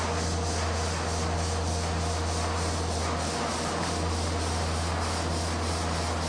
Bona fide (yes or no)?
yes